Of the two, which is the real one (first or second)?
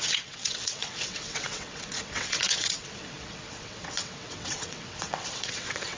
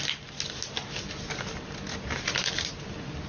second